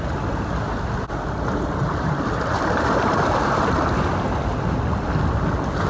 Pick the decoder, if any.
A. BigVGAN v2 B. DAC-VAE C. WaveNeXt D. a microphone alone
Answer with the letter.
D